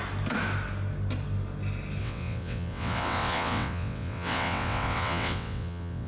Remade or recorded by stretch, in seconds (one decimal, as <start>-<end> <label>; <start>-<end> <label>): 0.0-2.0 recorded; 2.0-6.1 remade